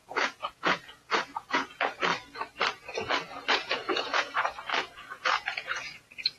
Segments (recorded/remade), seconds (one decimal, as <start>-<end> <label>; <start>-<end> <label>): 0.0-2.1 remade; 2.1-3.5 recorded; 3.5-6.4 remade